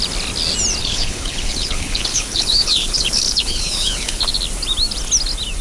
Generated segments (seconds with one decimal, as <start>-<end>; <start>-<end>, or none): 0.8-4.2

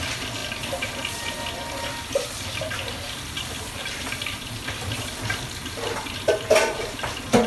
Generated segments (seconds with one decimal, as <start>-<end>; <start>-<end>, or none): 0.0-3.8; 6.0-7.5

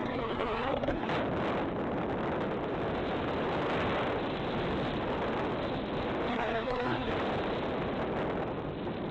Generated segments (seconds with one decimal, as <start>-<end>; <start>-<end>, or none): 0.0-1.1; 6.3-7.1

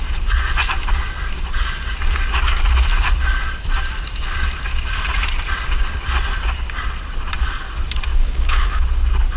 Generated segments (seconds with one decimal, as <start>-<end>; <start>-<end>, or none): 8.2-8.8